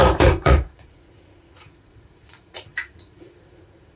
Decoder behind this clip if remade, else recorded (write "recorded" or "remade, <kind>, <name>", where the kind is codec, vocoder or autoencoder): remade, vocoder, Vocos